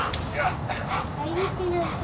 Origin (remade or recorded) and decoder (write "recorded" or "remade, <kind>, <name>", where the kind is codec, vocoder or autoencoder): recorded